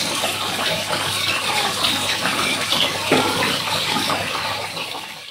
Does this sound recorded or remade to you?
remade